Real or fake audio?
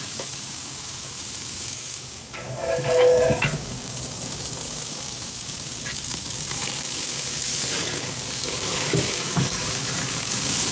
fake